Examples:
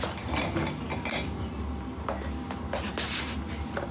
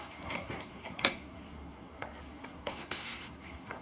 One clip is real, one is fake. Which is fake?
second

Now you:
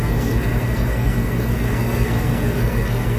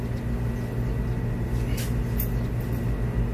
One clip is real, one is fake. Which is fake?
first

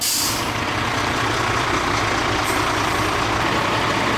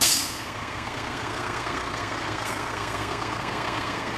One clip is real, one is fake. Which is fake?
second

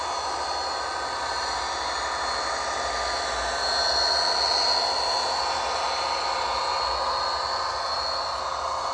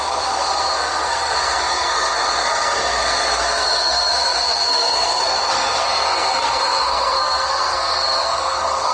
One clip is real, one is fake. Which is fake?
second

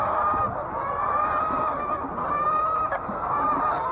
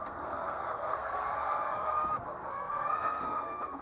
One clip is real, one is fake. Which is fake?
second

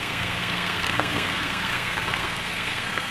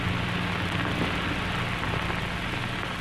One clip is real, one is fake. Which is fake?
first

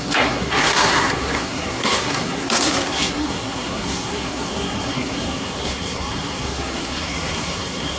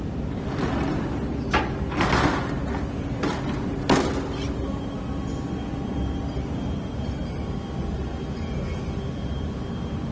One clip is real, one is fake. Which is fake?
first